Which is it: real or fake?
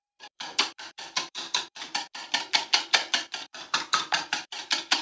fake